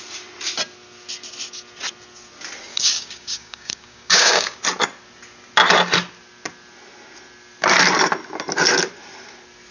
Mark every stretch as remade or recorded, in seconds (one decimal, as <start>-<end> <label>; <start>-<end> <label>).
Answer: 0.0-2.7 recorded; 2.7-4.6 remade; 4.6-9.7 recorded